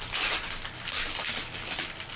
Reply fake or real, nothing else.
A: real